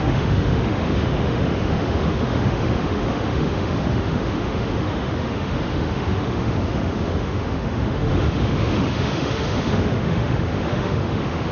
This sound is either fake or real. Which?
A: fake